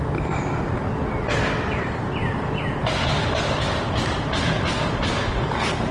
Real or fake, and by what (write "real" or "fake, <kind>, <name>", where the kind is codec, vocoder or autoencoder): real